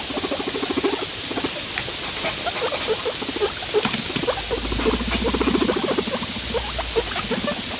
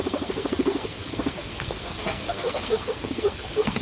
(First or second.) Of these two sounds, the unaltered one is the first